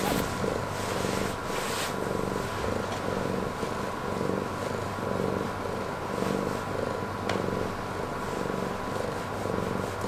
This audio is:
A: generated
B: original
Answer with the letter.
B